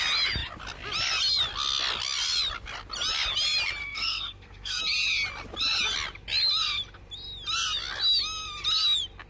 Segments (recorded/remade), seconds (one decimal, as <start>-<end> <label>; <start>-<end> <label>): 0.0-3.8 recorded; 3.8-4.8 remade; 4.8-9.3 recorded